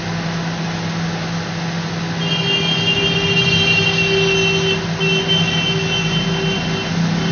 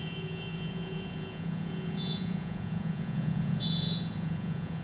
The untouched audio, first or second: first